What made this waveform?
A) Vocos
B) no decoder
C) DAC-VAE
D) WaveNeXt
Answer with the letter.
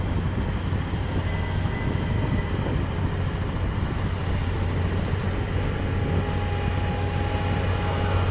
B